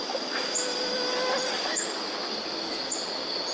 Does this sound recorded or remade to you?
recorded